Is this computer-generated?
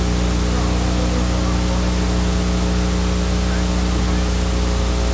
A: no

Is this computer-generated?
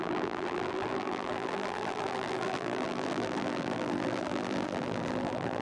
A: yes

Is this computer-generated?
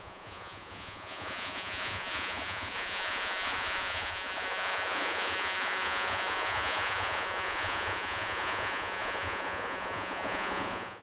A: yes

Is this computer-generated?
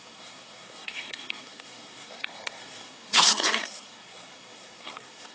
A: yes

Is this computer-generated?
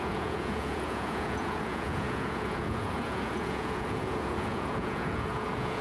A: yes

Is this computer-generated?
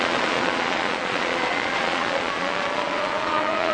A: yes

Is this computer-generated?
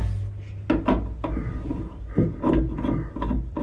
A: no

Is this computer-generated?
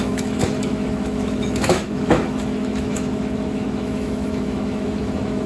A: yes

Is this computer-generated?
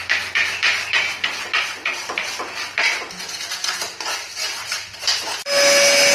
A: no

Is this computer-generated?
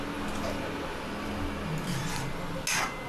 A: no